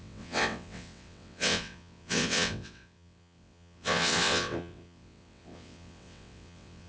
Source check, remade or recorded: remade